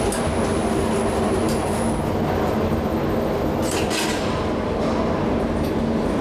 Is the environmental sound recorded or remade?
recorded